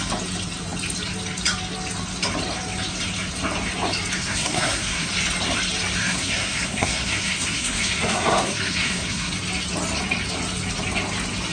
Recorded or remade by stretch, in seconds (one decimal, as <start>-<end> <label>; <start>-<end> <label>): 0.0-4.2 recorded; 4.2-5.1 remade; 5.1-6.0 recorded; 6.0-9.3 remade; 9.3-11.5 recorded